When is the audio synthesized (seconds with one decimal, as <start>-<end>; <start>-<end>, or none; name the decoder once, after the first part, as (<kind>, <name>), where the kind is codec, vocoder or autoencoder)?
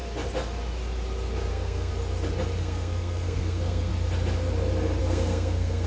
1.5-1.9 (codec, SNAC); 2.6-3.9; 5.0-5.9